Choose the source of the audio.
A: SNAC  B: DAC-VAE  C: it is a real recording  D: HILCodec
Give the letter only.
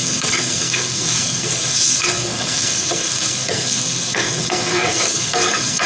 A